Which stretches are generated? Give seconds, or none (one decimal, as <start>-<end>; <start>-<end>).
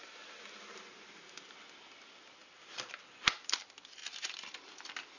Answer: none